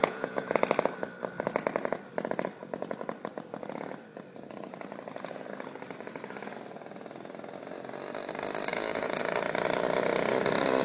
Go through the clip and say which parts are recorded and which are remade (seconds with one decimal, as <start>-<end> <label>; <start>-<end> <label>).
0.0-0.6 remade; 0.6-8.7 recorded; 8.7-9.2 remade; 9.2-10.8 recorded